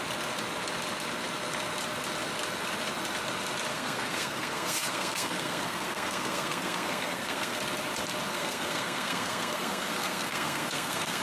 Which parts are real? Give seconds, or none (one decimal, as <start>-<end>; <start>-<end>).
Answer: 0.0-3.7; 7.6-8.3